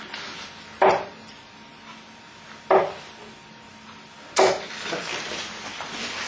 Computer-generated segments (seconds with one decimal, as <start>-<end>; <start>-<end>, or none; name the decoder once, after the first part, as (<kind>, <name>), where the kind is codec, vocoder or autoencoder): none